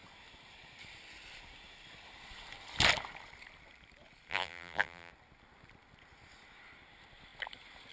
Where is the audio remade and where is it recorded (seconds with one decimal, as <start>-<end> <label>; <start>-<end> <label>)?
0.0-4.3 recorded; 4.3-5.1 remade; 5.1-7.9 recorded